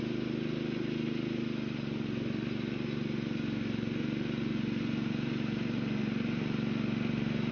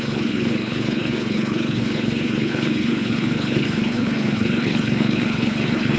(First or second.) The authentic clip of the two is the first